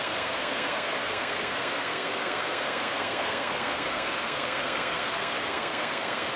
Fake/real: fake